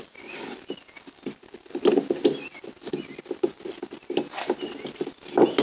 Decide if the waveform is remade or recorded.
recorded